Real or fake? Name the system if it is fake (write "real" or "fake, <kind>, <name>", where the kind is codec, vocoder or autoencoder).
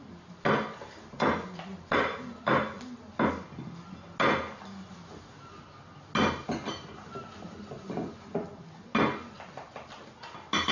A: real